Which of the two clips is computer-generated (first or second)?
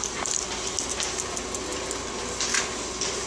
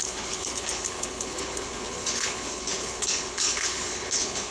second